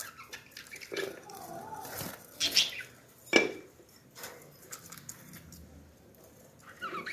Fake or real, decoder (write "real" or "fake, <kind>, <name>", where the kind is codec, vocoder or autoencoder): real